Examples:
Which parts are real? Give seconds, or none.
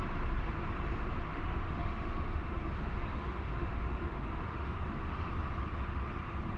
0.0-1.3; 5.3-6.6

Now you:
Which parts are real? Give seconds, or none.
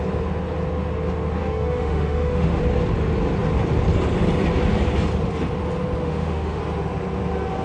0.0-1.4; 2.6-6.0; 6.6-7.6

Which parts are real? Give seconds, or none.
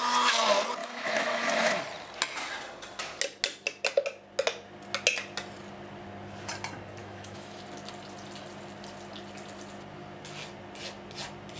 0.0-0.8; 1.8-7.0; 7.6-11.6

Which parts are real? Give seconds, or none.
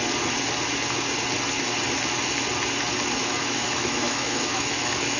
0.0-3.2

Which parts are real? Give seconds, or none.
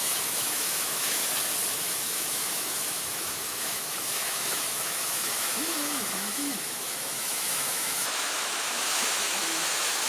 1.2-1.7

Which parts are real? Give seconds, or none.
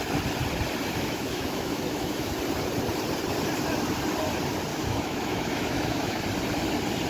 0.0-0.9; 2.4-4.7; 6.2-7.1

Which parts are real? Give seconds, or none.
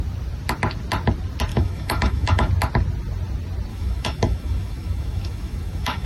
0.0-1.5; 2.5-3.7